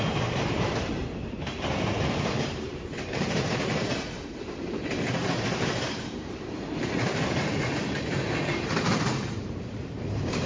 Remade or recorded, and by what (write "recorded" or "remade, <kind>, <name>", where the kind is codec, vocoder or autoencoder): remade, vocoder, BigVGAN v2